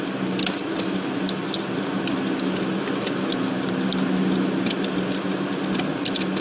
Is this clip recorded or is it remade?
recorded